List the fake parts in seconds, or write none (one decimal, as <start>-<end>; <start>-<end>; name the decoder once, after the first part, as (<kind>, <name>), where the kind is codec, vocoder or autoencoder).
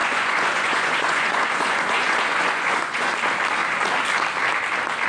0.0-3.1 (vocoder, Vocos)